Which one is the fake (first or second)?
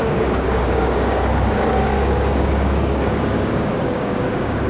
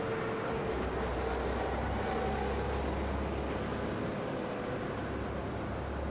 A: first